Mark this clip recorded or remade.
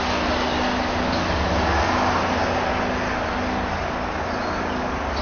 recorded